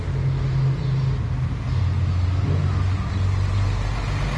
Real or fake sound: real